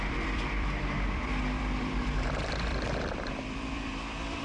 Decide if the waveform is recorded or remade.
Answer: remade